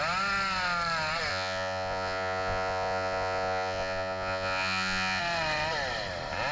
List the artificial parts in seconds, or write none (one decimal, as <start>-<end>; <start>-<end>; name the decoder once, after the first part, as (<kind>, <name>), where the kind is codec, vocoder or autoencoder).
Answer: 1.3-5.2 (vocoder, Vocos)